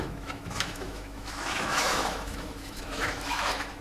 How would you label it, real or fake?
fake